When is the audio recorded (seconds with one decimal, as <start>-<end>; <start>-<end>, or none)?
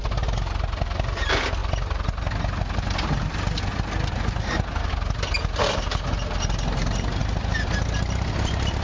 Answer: 0.0-8.8